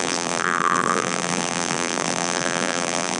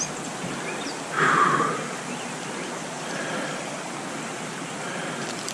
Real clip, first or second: second